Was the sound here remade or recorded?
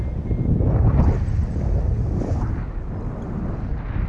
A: recorded